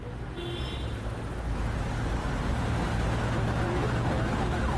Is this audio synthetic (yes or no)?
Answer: no